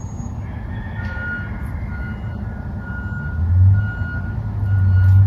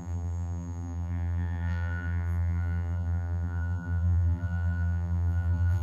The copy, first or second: second